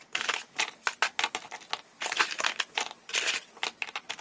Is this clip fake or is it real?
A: real